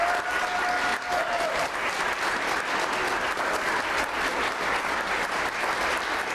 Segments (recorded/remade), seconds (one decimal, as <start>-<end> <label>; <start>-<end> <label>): 0.0-6.3 recorded